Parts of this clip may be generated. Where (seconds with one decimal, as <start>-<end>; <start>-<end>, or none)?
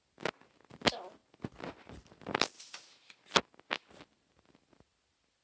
none